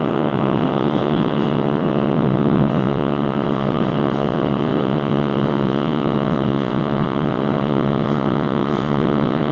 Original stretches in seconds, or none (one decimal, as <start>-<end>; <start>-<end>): none